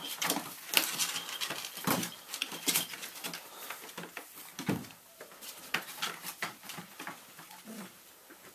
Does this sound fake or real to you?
real